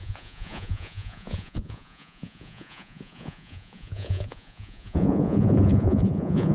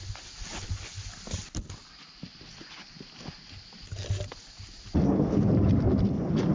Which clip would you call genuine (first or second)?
second